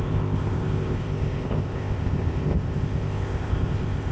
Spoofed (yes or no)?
yes